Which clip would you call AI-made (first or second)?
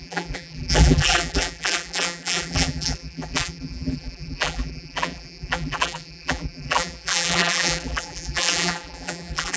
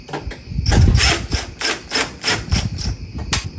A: first